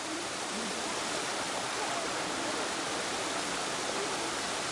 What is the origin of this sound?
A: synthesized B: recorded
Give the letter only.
A